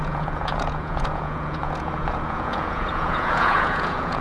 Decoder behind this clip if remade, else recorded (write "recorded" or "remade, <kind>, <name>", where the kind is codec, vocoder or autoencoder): remade, vocoder, Vocos